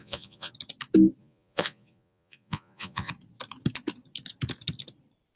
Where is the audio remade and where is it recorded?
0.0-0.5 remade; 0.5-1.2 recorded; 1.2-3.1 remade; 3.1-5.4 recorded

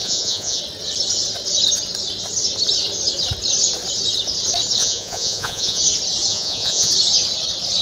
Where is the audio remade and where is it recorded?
0.0-0.6 remade; 0.6-4.8 recorded; 4.8-5.8 remade; 5.8-6.3 recorded; 6.3-6.9 remade; 6.9-7.8 recorded

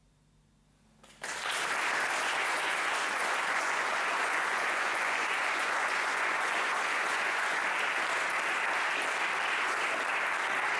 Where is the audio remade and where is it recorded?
0.0-2.2 recorded; 2.2-7.6 remade; 7.6-10.8 recorded

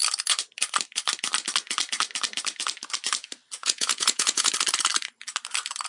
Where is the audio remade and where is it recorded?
0.0-3.6 recorded; 3.6-4.5 remade; 4.5-5.9 recorded